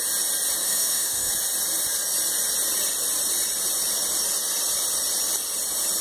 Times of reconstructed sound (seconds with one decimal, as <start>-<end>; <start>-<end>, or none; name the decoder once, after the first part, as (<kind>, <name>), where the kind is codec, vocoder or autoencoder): 0.6-1.3 (autoencoder, DAC-VAE)